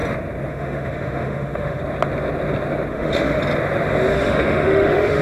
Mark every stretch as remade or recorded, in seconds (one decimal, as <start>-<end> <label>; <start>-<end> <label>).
0.0-0.5 recorded; 0.5-1.8 remade; 1.8-2.9 recorded; 2.9-3.4 remade; 3.4-4.1 recorded; 4.1-5.2 remade